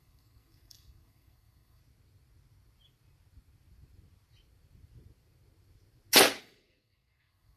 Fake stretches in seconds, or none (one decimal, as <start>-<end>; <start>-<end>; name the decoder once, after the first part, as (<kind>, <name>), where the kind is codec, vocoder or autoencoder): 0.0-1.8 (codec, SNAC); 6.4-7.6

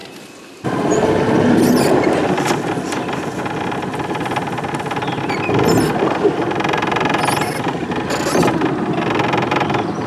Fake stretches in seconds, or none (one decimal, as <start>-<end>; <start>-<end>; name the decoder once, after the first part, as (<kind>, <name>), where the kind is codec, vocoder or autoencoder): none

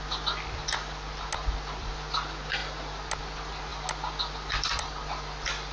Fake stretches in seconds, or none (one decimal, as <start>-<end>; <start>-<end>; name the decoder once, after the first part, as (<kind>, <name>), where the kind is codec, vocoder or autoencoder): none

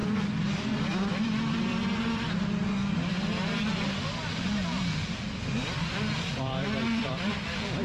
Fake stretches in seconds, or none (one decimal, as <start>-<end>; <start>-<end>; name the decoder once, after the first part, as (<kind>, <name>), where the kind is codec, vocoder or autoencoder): 0.0-2.6 (vocoder, BigVGAN v2); 5.8-7.8